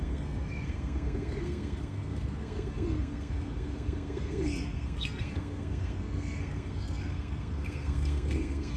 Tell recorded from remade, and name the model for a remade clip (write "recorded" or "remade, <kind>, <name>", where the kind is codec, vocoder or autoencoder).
remade, codec, SNAC